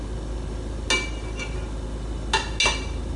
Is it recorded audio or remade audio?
recorded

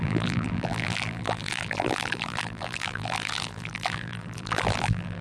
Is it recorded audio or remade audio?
remade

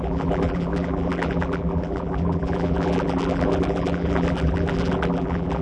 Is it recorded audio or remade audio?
remade